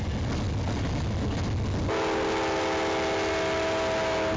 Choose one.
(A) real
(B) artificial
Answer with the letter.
A